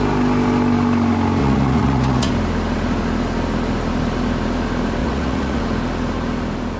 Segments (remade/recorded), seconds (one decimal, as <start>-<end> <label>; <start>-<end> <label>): 0.0-1.4 recorded; 1.4-2.3 remade; 2.3-5.0 recorded; 5.0-5.6 remade; 5.6-6.8 recorded